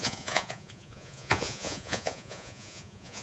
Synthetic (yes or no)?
yes